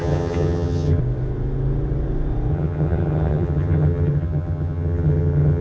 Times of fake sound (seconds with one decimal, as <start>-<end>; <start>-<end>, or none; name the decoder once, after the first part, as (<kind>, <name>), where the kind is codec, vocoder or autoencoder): 0.0-1.0 (vocoder, HiFi-GAN); 2.5-5.6